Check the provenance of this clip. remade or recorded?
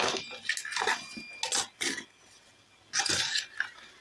recorded